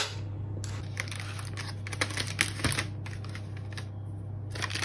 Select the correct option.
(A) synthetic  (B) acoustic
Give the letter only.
B